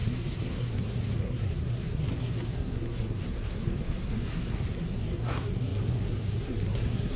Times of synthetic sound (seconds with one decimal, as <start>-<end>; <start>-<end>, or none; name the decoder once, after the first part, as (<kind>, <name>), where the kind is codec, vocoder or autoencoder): 0.0-7.2 (codec, SNAC)